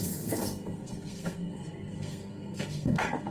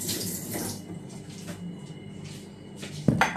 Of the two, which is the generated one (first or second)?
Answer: first